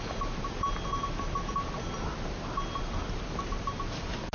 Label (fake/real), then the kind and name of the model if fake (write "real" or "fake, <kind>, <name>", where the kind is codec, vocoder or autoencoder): real